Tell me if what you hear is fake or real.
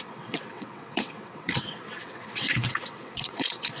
fake